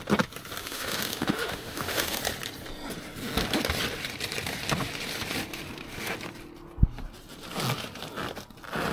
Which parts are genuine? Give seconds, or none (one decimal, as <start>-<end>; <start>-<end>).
0.0-0.6; 2.2-8.9

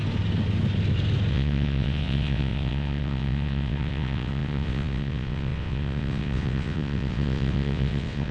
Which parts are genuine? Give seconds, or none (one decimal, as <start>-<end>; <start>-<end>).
0.0-1.3

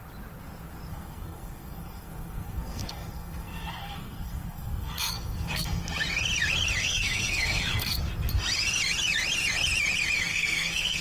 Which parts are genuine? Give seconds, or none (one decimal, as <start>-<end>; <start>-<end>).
0.0-0.9; 5.8-6.8; 8.0-10.3

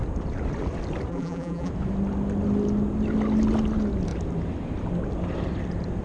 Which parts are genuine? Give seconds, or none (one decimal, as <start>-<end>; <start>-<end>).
0.0-1.1; 1.7-6.0

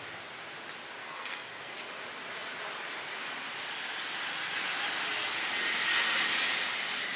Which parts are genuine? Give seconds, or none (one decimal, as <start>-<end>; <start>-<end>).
0.0-1.0; 2.0-7.2

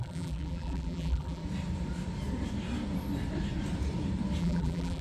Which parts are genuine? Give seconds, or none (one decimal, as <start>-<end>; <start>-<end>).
1.4-4.4

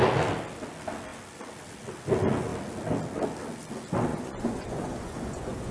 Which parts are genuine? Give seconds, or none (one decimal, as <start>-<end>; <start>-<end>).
0.0-4.1